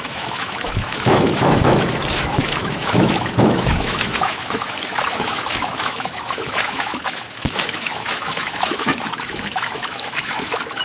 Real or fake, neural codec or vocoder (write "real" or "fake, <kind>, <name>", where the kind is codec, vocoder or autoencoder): fake, autoencoder, DAC-VAE